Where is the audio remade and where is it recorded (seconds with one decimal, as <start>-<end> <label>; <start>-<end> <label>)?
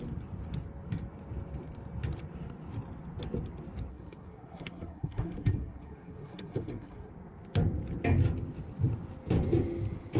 0.0-3.9 recorded; 3.9-7.1 remade; 7.1-10.2 recorded